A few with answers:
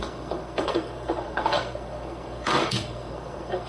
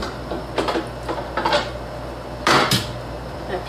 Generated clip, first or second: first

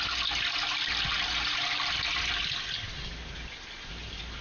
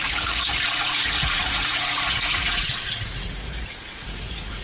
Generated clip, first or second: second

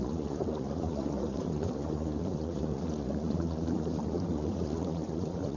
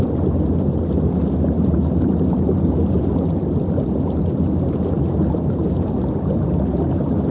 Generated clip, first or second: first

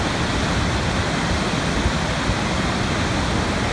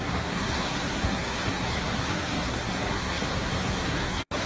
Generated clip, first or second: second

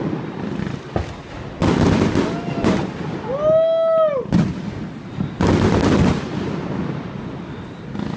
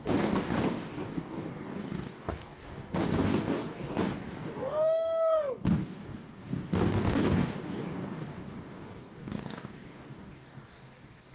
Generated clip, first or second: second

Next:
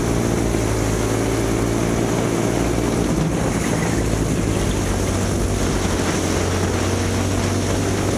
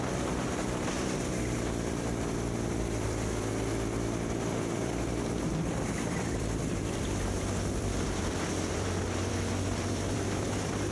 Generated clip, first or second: second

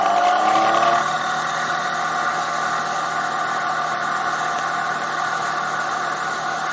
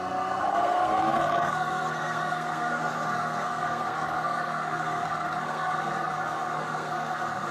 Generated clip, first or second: second